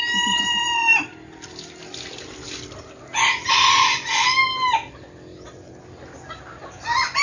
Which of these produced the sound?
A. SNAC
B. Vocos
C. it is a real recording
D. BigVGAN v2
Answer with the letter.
C